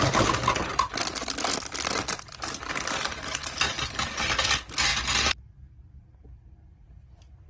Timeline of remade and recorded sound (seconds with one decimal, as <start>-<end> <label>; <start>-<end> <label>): 0.0-4.9 recorded; 4.9-7.5 remade